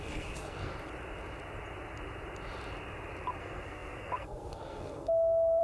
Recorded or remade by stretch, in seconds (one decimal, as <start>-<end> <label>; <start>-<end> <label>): 0.0-0.7 remade; 0.7-3.4 recorded; 3.4-5.6 remade